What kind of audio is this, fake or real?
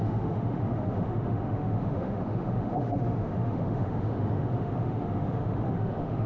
fake